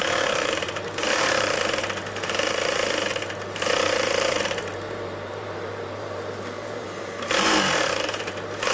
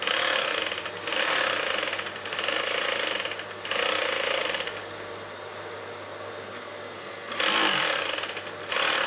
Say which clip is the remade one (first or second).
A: first